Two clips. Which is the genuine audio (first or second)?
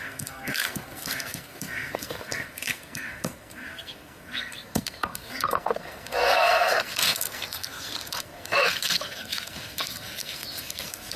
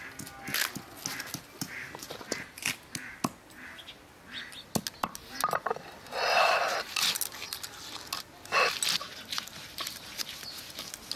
second